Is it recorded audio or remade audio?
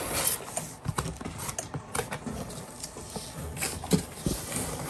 recorded